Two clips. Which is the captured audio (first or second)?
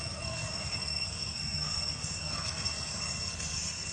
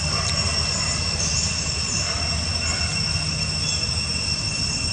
second